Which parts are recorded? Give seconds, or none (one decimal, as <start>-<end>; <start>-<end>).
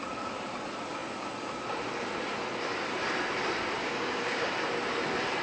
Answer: 0.0-3.8; 4.5-5.4